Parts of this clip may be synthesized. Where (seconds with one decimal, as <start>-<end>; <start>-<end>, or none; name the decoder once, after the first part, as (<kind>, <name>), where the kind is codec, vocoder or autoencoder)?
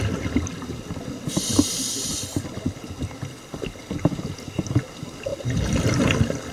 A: none